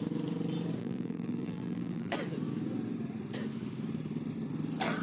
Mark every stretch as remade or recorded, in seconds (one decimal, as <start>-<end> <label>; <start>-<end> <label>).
0.0-0.8 recorded; 0.8-2.1 remade; 2.1-5.0 recorded